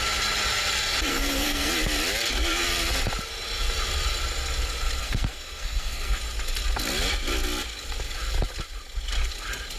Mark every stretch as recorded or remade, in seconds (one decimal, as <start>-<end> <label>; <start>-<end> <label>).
0.0-1.1 recorded; 1.1-1.7 remade; 1.7-5.0 recorded; 5.0-6.2 remade; 6.2-9.8 recorded

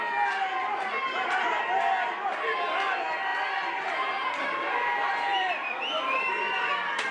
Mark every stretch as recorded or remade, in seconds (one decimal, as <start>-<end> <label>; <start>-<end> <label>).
0.0-7.1 recorded

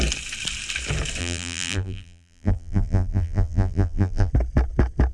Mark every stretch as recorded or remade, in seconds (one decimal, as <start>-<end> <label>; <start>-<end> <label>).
0.0-1.2 recorded; 1.2-4.3 remade; 4.3-5.1 recorded

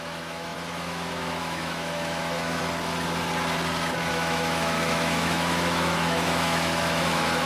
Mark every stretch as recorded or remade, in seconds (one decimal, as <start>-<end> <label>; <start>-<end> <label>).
0.0-2.6 remade; 2.6-4.1 recorded; 4.1-7.5 remade

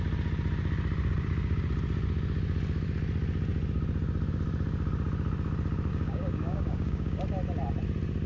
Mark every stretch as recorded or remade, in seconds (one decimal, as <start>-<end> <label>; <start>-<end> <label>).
0.0-5.9 recorded; 5.9-7.2 remade; 7.2-8.3 recorded

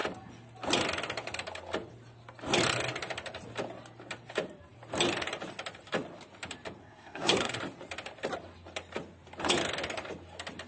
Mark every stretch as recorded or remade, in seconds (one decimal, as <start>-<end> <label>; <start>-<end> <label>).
0.0-6.8 recorded; 6.8-7.6 remade; 7.6-10.7 recorded